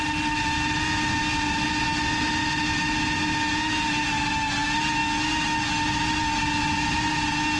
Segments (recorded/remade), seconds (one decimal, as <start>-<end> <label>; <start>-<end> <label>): 0.0-7.6 recorded